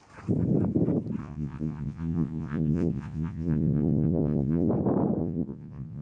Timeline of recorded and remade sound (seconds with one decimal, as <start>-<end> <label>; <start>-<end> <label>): 0.0-1.2 recorded; 1.2-4.7 remade; 4.7-5.2 recorded; 5.2-6.0 remade